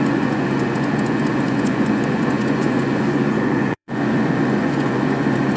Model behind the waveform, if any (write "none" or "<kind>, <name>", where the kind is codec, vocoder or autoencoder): vocoder, Vocos